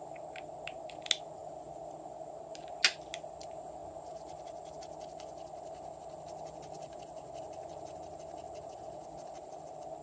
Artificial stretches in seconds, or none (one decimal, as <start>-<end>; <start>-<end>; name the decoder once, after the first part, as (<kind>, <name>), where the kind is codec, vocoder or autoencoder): none